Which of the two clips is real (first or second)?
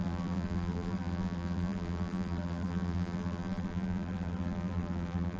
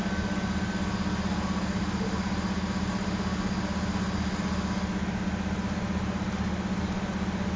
second